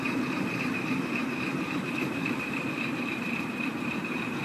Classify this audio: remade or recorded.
remade